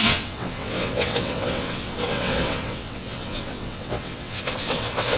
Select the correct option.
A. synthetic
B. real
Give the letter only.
A